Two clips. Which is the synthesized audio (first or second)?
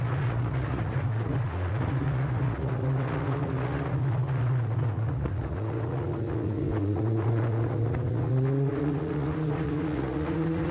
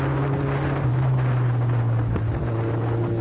first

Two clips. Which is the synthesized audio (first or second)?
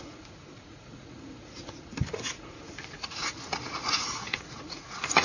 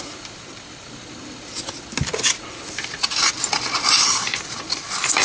first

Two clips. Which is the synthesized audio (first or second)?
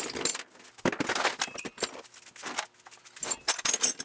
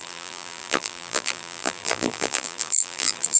second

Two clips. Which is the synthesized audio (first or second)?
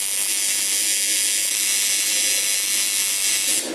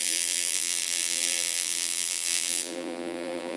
second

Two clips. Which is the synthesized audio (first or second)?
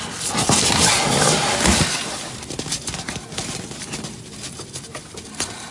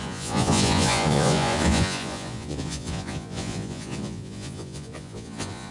second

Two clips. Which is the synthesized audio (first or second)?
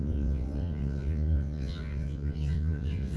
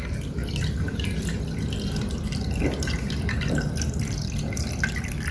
first